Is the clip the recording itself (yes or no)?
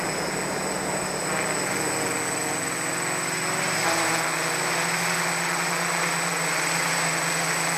yes